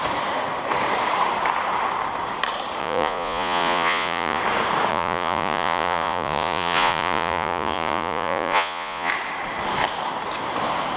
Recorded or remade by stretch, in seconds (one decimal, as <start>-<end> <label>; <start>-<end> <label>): 0.0-2.8 recorded; 2.8-4.4 remade; 4.4-4.9 recorded; 4.9-9.1 remade; 9.1-11.0 recorded